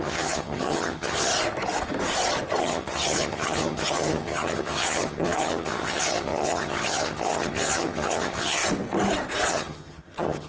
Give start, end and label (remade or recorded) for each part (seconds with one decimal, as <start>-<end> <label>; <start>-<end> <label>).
0.0-1.3 remade; 1.3-2.6 recorded; 2.6-8.6 remade; 8.6-9.5 recorded; 9.5-10.5 remade